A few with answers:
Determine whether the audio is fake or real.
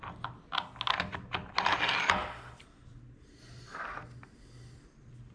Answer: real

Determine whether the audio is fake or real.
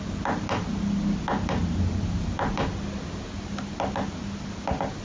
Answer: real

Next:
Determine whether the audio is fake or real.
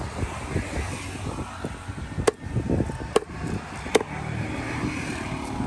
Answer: real